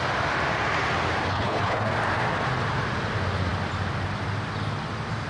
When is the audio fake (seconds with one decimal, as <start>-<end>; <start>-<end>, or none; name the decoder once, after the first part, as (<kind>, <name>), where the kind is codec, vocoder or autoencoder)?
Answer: 1.3-1.9 (codec, HILCodec)